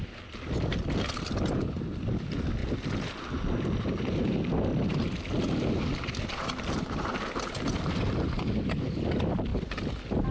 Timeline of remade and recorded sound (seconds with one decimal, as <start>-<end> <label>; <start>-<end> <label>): 0.0-2.6 recorded; 2.6-4.1 remade; 4.1-4.7 recorded; 4.7-8.0 remade; 8.0-10.3 recorded